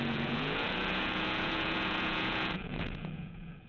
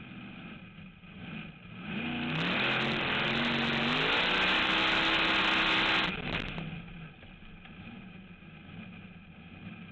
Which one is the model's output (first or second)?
first